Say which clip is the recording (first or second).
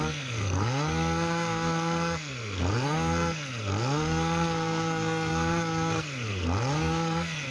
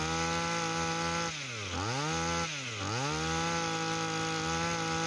second